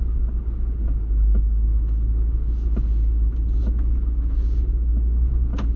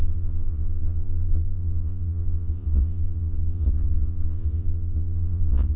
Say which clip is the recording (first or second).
first